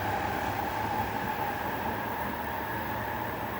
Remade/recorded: recorded